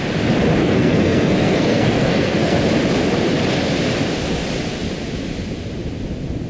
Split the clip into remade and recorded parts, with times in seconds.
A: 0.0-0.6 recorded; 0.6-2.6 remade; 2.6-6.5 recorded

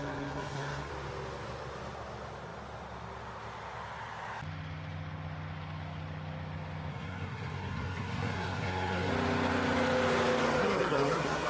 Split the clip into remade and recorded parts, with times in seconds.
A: 0.0-0.9 remade; 0.9-6.9 recorded; 6.9-9.1 remade; 9.1-10.6 recorded; 10.6-11.5 remade

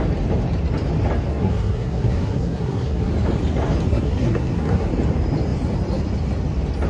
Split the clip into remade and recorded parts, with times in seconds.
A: 0.0-1.3 recorded; 1.3-3.1 remade; 3.1-3.9 recorded; 3.9-4.9 remade; 4.9-6.9 recorded

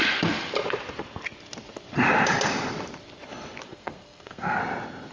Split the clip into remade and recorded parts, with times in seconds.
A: 0.0-3.7 recorded; 3.7-4.6 remade; 4.6-5.1 recorded

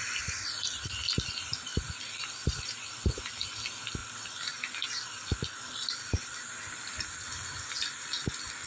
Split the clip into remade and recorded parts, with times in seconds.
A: 0.0-8.7 recorded

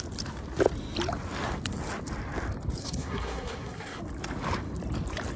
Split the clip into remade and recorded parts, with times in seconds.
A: 0.0-2.8 recorded; 2.8-4.0 remade; 4.0-5.4 recorded